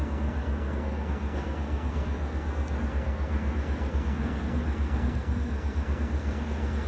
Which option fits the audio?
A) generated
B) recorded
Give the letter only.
A